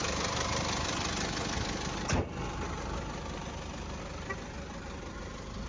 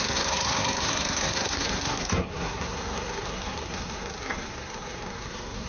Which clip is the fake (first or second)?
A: second